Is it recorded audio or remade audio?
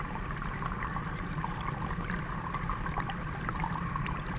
recorded